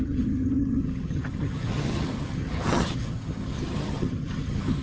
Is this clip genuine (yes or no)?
no